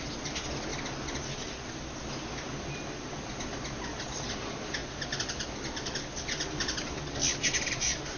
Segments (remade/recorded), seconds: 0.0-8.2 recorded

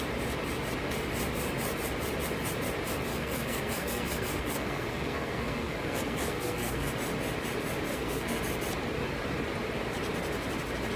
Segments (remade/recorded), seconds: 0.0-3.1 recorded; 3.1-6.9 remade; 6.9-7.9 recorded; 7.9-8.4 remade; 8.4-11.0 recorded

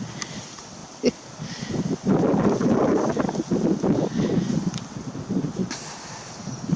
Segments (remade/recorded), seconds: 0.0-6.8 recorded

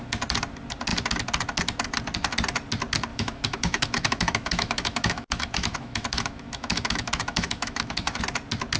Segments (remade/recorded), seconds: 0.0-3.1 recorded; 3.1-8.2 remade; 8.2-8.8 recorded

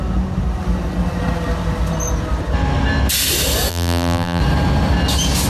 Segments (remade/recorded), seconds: 0.0-3.7 recorded; 3.7-4.4 remade; 4.4-5.5 recorded